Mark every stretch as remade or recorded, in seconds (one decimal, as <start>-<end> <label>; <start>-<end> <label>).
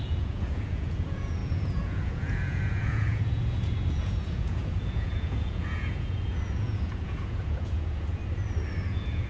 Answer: 0.0-8.2 remade; 8.2-8.9 recorded; 8.9-9.3 remade